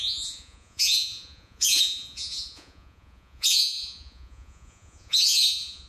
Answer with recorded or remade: remade